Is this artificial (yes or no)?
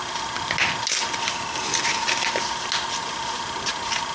no